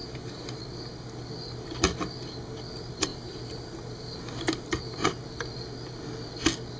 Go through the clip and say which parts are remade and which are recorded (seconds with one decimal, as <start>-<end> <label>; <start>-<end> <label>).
0.0-0.6 remade; 0.6-3.1 recorded; 3.1-5.1 remade; 5.1-6.8 recorded